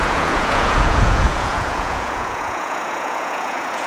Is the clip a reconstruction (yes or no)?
yes